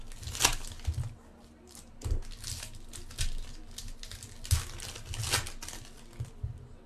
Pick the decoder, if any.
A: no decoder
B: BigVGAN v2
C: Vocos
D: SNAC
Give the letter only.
A